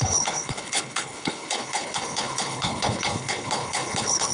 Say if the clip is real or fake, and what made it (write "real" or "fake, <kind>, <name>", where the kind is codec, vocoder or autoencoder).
fake, codec, HILCodec